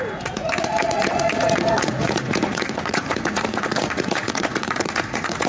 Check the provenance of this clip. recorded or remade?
remade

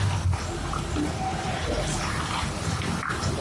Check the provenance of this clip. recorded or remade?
recorded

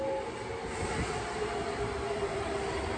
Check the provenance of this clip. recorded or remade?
recorded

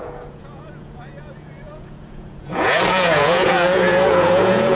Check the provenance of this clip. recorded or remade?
remade